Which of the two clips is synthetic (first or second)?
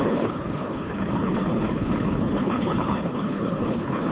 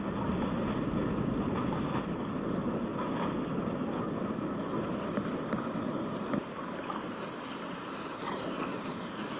first